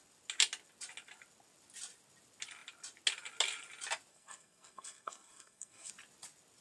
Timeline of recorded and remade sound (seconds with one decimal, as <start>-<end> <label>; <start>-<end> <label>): 0.0-4.1 recorded; 4.1-5.9 remade; 5.9-6.6 recorded